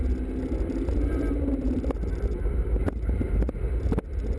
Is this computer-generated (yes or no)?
no